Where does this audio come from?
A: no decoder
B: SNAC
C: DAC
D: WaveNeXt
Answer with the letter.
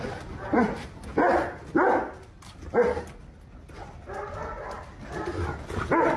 A